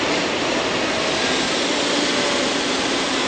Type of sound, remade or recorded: recorded